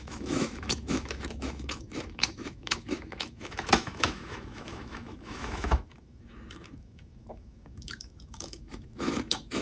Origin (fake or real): fake